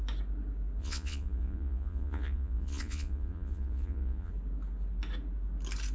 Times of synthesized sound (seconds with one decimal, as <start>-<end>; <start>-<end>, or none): 0.8-4.3